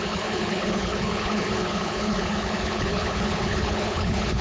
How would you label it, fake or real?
fake